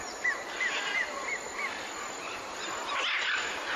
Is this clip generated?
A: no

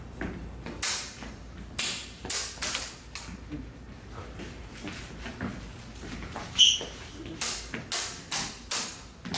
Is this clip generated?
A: no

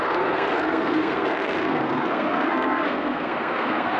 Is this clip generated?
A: yes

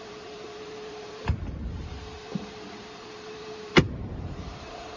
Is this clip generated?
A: yes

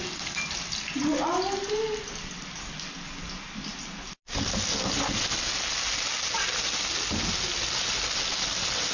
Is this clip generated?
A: no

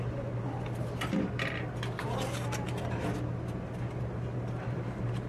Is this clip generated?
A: no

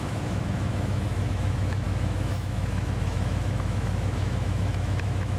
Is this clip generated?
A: yes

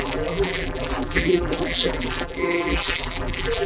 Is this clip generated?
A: yes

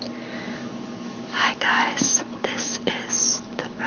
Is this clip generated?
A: yes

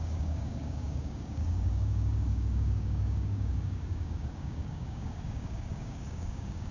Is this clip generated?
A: yes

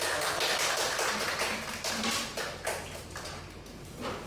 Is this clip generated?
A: no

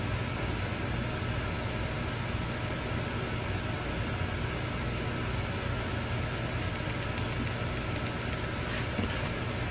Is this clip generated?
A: no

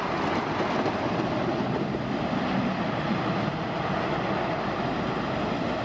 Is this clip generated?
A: no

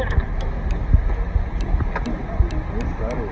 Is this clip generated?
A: no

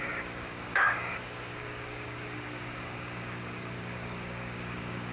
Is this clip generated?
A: yes